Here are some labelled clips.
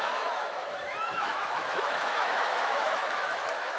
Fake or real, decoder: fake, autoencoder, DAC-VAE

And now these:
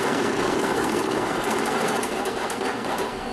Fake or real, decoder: fake, codec, SNAC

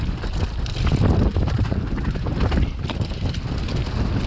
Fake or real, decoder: real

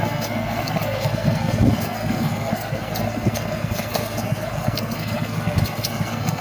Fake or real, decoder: fake, codec, SNAC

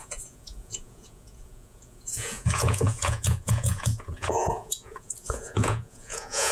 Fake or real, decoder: fake, vocoder, Vocos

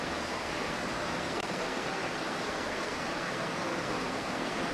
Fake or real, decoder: fake, codec, SNAC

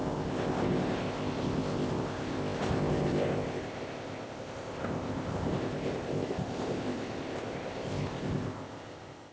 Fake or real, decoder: fake, codec, ZipCodec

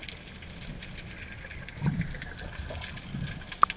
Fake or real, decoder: real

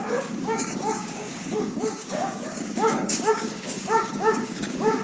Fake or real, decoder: fake, codec, DAC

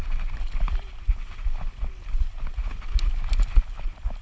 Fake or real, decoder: real